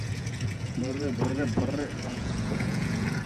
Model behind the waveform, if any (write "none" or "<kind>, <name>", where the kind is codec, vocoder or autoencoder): vocoder, Vocos